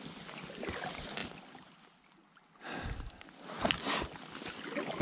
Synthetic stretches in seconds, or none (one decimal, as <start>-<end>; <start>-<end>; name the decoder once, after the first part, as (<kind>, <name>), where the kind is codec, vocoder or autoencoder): none